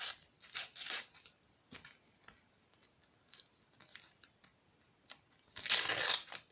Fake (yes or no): no